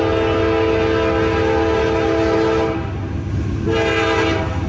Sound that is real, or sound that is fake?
real